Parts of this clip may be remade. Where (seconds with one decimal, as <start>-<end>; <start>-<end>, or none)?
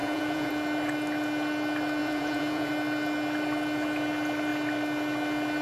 0.0-0.5; 2.0-2.7